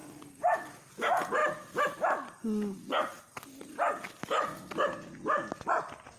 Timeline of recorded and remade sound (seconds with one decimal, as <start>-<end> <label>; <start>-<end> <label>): 0.0-6.2 recorded